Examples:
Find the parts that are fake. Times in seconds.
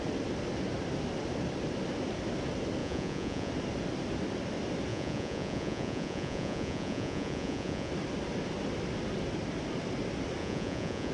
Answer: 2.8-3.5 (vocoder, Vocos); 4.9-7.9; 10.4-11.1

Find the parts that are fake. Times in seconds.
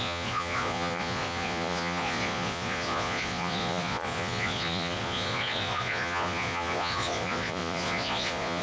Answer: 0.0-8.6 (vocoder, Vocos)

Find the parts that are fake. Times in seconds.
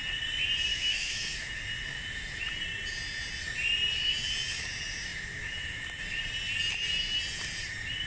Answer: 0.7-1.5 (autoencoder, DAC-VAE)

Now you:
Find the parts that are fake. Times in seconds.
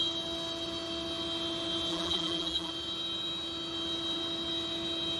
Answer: 1.9-2.7 (vocoder, BigVGAN v2)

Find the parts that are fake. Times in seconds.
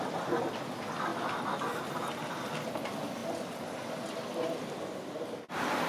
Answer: none